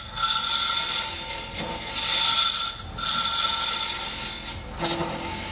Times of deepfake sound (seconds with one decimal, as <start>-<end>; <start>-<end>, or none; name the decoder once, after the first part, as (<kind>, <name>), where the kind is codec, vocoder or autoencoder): 0.0-0.4 (codec, SNAC); 1.3-1.9